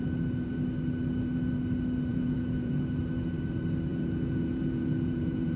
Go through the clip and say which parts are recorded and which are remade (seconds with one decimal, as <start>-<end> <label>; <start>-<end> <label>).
0.0-2.1 recorded; 2.1-2.7 remade; 2.7-3.9 recorded; 3.9-5.6 remade